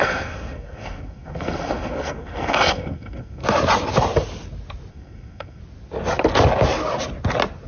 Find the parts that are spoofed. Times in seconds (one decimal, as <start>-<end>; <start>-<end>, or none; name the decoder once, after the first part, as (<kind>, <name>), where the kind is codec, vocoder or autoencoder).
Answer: 0.0-3.4 (codec, SNAC); 4.9-5.6